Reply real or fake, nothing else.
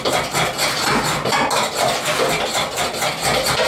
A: real